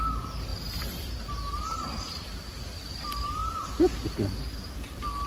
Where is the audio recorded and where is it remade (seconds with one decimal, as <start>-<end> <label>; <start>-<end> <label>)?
0.0-0.5 recorded; 0.5-1.1 remade; 1.1-5.3 recorded